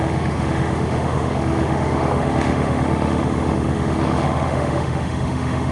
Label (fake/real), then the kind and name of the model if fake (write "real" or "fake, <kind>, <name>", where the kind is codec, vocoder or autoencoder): fake, autoencoder, DAC-VAE